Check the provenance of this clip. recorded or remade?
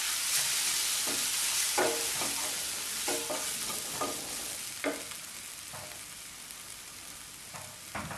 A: recorded